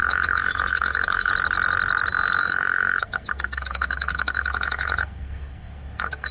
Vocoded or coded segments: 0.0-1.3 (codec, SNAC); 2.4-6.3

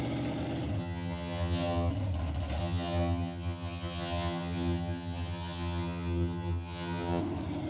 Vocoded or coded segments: 0.8-1.9 (vocoder, HiFi-GAN); 2.6-7.2